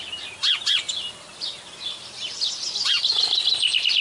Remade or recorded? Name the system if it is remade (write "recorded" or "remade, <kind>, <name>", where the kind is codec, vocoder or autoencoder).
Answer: recorded